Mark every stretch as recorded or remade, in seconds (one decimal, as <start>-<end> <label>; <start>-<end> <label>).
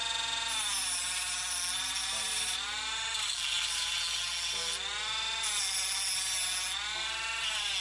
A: 0.0-2.0 recorded; 2.0-3.8 remade; 3.8-7.8 recorded